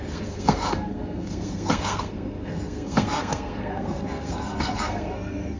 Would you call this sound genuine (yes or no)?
no